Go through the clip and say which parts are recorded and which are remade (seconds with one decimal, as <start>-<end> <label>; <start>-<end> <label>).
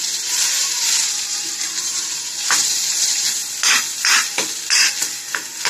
0.0-3.4 remade; 3.4-5.7 recorded